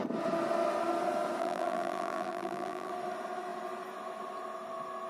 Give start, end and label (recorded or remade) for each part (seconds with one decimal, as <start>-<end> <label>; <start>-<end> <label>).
0.0-1.4 recorded; 1.4-2.9 remade; 2.9-5.1 recorded